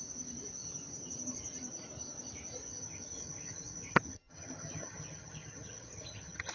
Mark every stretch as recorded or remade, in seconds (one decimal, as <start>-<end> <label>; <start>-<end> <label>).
0.0-2.6 recorded; 2.6-6.5 remade